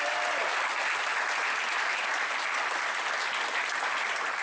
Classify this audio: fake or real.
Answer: real